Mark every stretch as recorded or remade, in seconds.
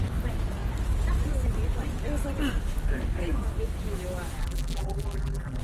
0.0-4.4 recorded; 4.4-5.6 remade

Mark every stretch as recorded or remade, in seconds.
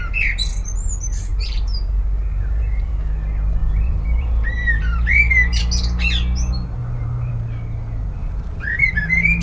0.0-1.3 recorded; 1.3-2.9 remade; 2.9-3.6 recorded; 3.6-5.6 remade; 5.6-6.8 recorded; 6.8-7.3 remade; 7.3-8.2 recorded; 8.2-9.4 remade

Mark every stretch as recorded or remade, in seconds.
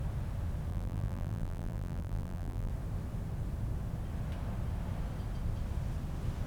0.0-0.7 recorded; 0.7-2.7 remade; 2.7-6.5 recorded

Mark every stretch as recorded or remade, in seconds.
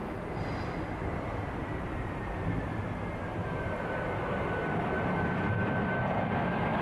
0.0-1.9 recorded; 1.9-6.8 remade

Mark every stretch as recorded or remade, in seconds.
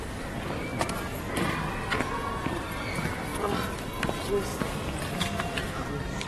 0.0-0.7 recorded; 0.7-1.3 remade; 1.3-3.3 recorded; 3.3-3.9 remade; 3.9-4.5 recorded; 4.5-5.6 remade; 5.6-6.3 recorded